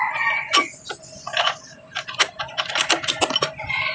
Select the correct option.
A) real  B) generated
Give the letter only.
A